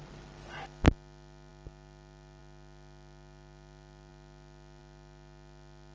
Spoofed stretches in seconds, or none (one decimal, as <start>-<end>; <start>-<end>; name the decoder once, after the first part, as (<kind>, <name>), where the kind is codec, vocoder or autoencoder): none